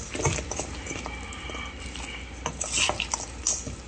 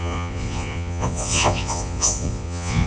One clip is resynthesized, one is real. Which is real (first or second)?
first